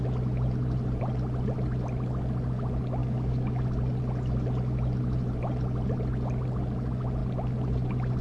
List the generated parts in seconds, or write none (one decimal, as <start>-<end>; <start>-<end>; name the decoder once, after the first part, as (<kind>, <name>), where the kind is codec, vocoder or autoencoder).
3.0-3.6 (codec, DAC)